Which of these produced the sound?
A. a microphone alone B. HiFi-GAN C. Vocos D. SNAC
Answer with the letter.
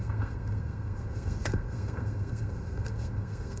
D